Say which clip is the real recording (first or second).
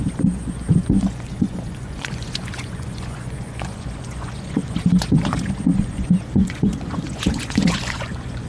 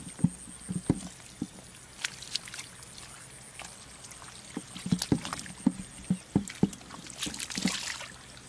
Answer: second